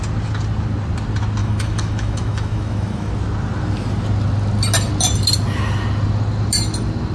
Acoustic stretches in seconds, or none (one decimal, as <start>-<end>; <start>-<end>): 0.0-1.4; 3.1-7.1